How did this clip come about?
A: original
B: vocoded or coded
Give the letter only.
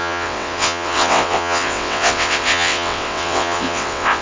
B